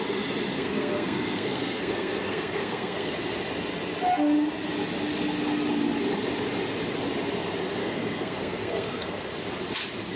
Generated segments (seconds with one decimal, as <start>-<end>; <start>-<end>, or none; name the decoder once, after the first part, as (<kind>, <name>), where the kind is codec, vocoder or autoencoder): 0.5-3.1 (codec, SNAC); 7.8-9.3